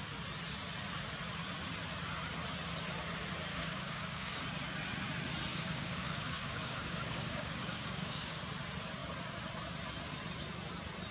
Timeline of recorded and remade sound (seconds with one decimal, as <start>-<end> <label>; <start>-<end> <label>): 0.0-3.5 recorded; 3.5-4.4 remade; 4.4-5.5 recorded; 5.5-8.4 remade; 8.4-11.1 recorded